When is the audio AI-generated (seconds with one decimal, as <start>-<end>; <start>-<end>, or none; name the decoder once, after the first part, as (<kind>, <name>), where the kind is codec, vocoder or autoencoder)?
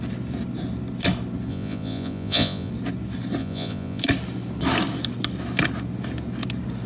1.5-2.7 (vocoder, Vocos); 3.4-4.0